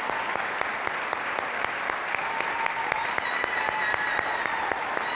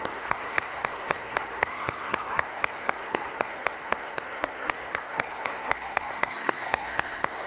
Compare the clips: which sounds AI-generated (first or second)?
second